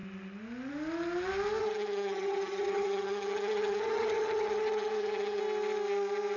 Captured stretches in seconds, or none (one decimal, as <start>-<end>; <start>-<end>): 0.0-1.6; 5.4-6.4